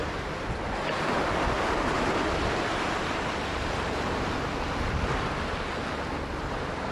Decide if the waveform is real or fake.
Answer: real